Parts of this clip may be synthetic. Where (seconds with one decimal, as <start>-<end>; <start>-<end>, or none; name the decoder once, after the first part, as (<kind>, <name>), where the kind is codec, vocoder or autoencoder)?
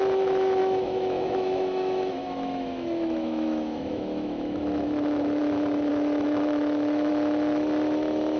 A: 0.6-5.4 (autoencoder, DAC-VAE); 5.9-7.1